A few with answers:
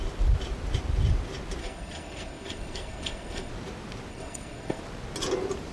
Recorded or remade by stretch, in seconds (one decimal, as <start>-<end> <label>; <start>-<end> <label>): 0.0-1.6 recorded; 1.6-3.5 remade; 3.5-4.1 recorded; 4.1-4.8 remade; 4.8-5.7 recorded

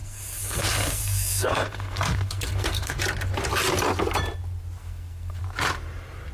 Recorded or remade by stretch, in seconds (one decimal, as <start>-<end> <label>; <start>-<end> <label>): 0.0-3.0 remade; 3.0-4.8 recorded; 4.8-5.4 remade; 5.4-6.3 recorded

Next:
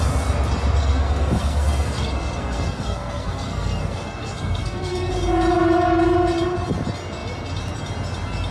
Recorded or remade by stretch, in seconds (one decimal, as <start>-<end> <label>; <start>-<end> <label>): 0.0-0.8 recorded; 0.8-5.1 remade; 5.1-8.5 recorded